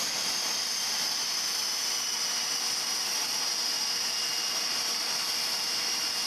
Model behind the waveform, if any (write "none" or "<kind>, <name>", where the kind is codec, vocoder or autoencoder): none